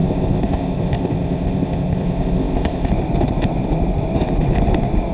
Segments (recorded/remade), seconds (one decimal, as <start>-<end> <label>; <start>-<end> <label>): 0.0-2.9 remade; 2.9-5.1 recorded